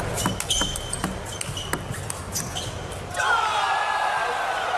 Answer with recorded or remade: recorded